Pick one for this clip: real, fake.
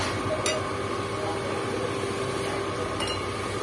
real